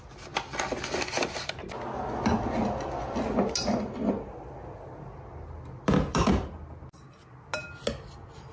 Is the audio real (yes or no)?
yes